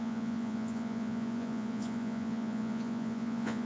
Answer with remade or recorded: remade